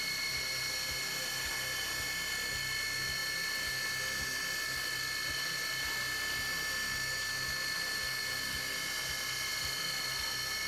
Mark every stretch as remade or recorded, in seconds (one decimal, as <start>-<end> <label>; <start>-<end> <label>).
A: 0.0-10.7 recorded